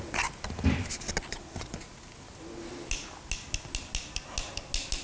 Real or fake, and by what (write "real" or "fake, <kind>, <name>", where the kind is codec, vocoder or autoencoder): real